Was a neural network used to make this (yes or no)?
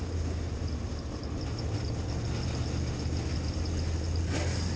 no